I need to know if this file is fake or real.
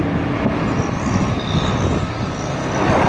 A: real